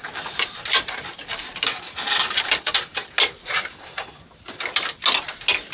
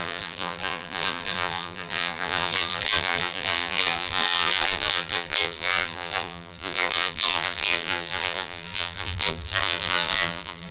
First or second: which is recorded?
first